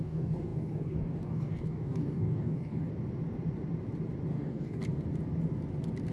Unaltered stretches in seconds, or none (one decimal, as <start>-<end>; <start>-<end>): 2.9-4.3; 4.8-6.1